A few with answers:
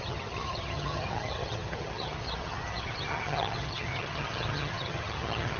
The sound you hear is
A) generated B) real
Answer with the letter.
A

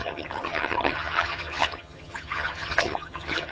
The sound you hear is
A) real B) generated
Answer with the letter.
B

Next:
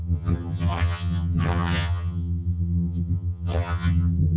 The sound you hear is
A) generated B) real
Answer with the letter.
A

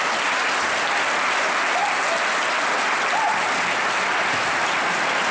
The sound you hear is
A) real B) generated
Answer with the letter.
A